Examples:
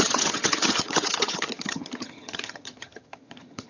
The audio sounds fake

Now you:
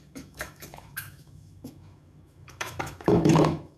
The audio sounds fake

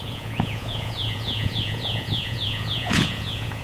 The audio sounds fake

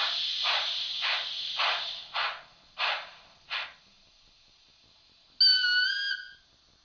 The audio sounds real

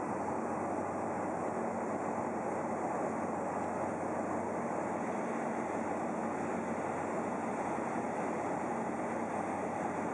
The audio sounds real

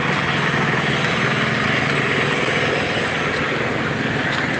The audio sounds real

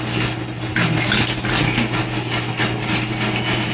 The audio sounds real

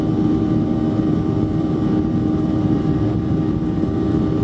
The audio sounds fake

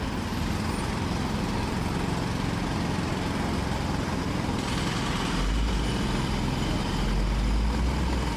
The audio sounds real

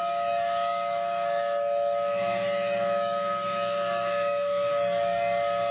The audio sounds fake